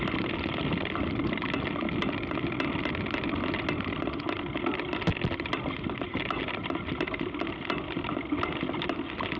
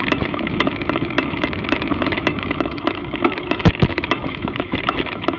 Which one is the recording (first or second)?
first